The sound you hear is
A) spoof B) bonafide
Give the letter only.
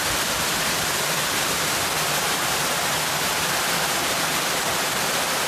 A